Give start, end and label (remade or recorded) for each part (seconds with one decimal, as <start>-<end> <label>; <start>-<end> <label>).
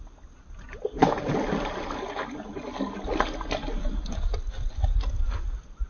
0.0-5.9 recorded